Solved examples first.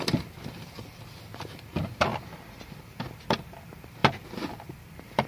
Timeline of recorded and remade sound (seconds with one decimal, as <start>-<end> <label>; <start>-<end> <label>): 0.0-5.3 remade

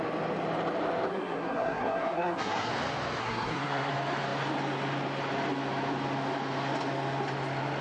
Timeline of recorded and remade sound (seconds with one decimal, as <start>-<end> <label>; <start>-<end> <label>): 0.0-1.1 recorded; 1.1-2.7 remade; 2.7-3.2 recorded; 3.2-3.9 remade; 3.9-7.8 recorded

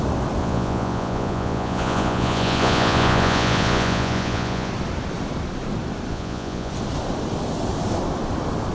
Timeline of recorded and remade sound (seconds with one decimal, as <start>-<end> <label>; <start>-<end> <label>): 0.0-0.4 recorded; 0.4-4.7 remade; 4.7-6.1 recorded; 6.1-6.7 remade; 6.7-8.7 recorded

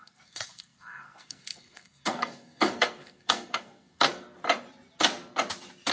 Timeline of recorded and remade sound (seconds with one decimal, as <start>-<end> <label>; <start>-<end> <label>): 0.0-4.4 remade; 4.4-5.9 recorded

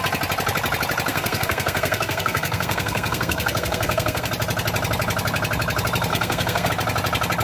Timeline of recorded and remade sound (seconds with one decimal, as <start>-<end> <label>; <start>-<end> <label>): 0.0-1.1 recorded; 1.1-4.3 remade; 4.3-6.1 recorded; 6.1-6.7 remade; 6.7-7.4 recorded

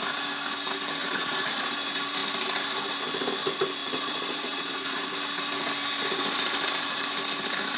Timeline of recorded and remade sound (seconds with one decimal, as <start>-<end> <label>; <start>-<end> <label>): 0.0-1.0 recorded; 1.0-1.5 remade; 1.5-3.8 recorded; 3.8-5.1 remade; 5.1-7.8 recorded